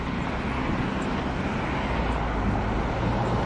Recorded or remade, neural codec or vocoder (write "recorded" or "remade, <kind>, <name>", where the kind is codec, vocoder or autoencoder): recorded